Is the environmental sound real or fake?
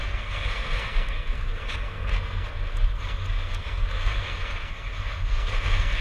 fake